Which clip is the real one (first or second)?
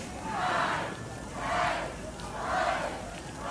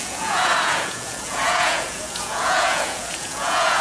first